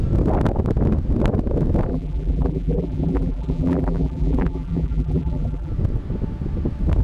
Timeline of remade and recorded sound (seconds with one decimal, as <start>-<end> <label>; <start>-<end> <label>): 0.0-1.9 recorded; 1.9-5.7 remade; 5.7-7.0 recorded